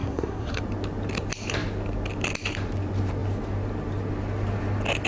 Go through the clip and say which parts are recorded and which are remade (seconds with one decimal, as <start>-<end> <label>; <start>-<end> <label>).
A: 0.0-0.6 remade; 0.6-5.1 recorded